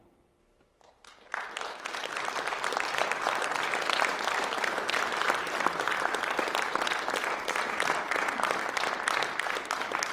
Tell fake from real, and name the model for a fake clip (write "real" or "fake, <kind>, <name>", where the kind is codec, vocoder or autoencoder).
real